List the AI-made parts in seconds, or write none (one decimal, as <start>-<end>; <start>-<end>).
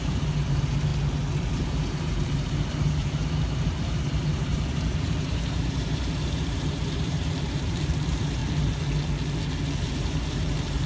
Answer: 0.0-0.9; 1.5-8.4; 9.9-10.9